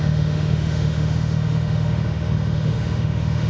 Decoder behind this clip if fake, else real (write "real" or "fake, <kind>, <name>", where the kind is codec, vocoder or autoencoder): fake, autoencoder, DAC-VAE